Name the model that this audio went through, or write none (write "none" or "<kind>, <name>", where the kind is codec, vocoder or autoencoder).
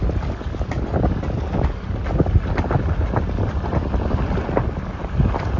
none